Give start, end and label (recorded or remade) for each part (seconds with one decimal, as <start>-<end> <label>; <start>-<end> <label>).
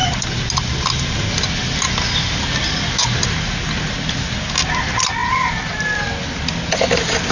0.0-7.3 recorded